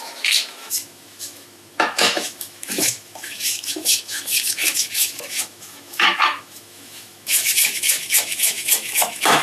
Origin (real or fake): fake